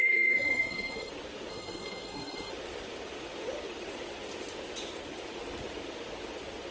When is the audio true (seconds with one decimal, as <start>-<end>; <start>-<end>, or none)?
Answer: 1.1-1.5; 2.5-6.7